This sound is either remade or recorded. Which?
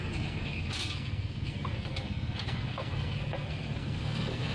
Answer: remade